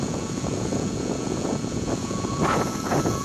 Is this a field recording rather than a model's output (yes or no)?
no